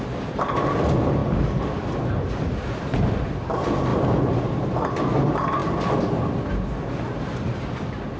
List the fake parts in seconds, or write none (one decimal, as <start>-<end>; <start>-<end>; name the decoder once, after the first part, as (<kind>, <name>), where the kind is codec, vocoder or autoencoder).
3.9-5.0 (vocoder, BigVGAN v2)